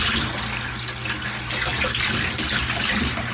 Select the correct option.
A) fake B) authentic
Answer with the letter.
B